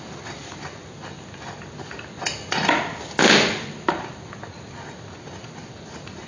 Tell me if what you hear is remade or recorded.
recorded